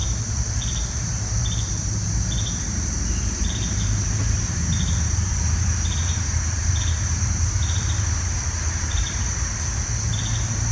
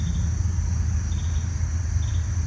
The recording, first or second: second